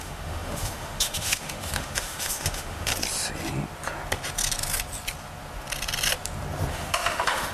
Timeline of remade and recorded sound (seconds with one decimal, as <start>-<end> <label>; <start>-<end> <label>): 0.0-2.9 remade; 2.9-6.7 recorded; 6.7-7.5 remade